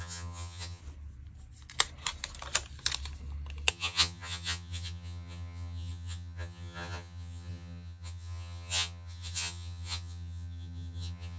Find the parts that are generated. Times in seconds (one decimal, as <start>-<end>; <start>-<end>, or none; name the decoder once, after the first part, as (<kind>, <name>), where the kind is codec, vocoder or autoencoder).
0.0-0.8 (vocoder, HiFi-GAN); 3.7-11.4